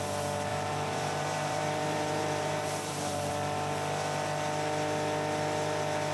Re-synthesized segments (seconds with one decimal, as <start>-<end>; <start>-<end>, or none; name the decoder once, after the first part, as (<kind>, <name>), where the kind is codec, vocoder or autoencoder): 0.5-3.3 (vocoder, BigVGAN v2)